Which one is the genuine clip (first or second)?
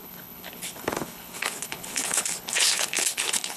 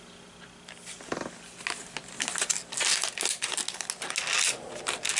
second